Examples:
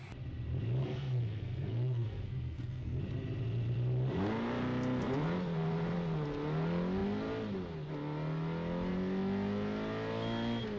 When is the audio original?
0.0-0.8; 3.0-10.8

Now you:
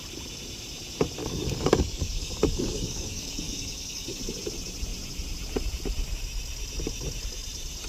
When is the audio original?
0.0-1.2; 4.2-7.9

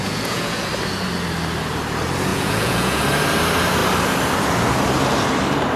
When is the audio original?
0.7-2.3; 3.0-5.8